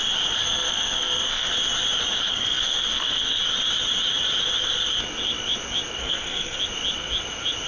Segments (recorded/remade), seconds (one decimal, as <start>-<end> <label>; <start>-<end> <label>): 0.0-0.4 recorded; 0.4-1.5 remade; 1.5-2.3 recorded; 2.3-3.4 remade; 3.4-6.0 recorded; 6.0-6.6 remade; 6.6-7.7 recorded